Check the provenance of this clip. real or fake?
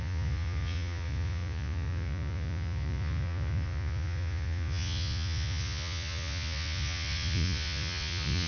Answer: fake